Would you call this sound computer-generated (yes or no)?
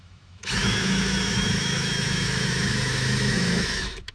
yes